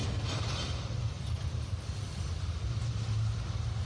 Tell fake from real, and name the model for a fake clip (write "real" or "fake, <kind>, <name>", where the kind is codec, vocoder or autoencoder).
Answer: real